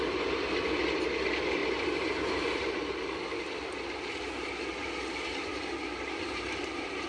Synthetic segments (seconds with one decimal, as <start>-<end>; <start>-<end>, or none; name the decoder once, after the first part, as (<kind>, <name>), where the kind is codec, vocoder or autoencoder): 5.5-7.1 (vocoder, BigVGAN v2)